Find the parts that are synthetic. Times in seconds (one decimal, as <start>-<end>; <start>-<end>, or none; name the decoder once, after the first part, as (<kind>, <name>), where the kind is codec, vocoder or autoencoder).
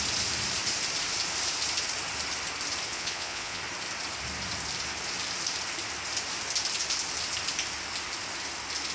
2.9-3.6 (vocoder, Vocos)